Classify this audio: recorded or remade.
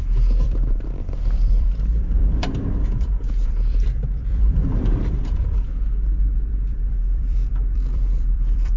remade